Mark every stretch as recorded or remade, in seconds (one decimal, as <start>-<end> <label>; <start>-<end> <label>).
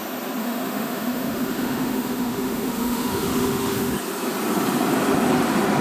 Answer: 0.0-0.4 recorded; 0.4-3.9 remade; 3.9-5.8 recorded